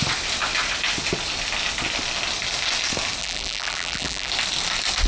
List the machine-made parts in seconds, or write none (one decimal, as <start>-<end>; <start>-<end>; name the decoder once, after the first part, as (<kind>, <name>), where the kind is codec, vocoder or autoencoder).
3.2-4.3 (vocoder, BigVGAN v2)